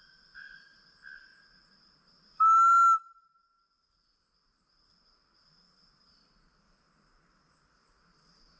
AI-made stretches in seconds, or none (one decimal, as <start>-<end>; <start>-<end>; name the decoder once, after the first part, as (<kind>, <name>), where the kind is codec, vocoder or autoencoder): none